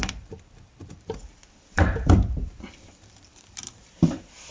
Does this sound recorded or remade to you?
remade